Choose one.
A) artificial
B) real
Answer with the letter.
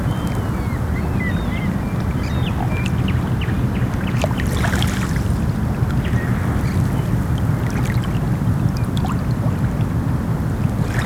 B